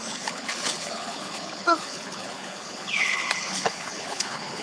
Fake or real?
fake